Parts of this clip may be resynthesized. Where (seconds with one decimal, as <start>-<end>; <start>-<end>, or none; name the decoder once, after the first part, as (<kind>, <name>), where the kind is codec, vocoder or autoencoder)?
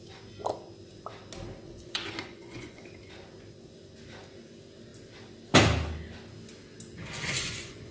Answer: 1.6-2.8 (vocoder, Vocos); 6.9-7.9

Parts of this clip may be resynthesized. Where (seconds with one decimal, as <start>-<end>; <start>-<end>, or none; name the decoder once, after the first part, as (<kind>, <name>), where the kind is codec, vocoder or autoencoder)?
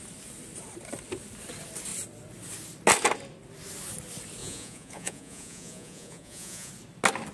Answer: 4.4-6.7 (vocoder, Vocos)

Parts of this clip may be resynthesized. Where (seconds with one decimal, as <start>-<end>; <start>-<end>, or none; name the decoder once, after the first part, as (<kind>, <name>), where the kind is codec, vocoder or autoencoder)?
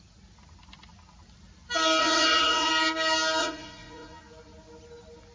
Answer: 2.0-2.7 (vocoder, Vocos); 3.4-4.2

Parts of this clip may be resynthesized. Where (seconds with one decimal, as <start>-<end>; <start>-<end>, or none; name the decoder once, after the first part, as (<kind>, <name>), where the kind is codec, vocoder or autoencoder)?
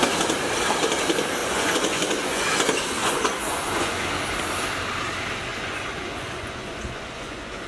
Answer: 1.4-2.5 (vocoder, Vocos); 3.0-4.1; 5.5-7.7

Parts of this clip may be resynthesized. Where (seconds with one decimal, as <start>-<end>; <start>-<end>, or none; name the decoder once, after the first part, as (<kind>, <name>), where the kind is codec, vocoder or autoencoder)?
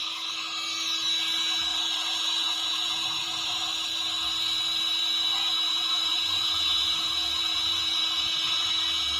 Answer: 1.7-3.6 (vocoder, Vocos); 5.7-8.7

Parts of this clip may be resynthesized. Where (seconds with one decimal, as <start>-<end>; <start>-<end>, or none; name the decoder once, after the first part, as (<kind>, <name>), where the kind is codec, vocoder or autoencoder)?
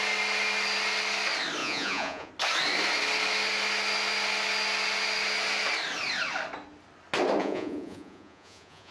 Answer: 1.6-2.3 (vocoder, Vocos); 7.4-8.9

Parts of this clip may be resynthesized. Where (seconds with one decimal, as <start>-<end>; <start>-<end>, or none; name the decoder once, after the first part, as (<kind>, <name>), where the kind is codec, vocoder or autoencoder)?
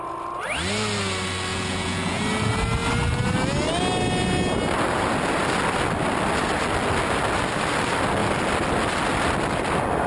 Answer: 1.5-2.2 (vocoder, Vocos)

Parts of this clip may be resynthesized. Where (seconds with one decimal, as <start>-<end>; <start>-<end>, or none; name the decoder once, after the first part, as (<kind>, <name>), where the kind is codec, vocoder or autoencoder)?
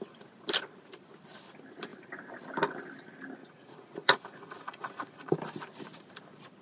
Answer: 3.4-5.3 (vocoder, Vocos)